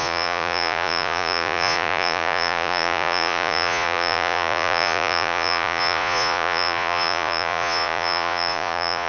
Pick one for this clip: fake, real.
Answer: fake